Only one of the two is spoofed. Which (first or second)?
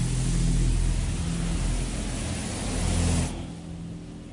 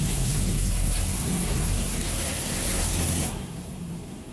second